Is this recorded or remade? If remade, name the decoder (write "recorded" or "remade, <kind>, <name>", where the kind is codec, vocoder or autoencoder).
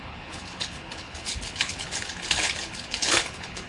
remade, codec, HILCodec